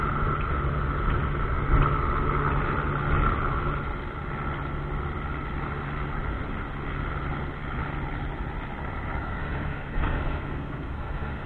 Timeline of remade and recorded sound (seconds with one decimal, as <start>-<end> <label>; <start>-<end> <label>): 0.0-9.2 recorded; 9.2-11.5 remade